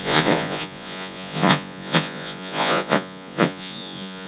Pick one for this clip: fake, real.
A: fake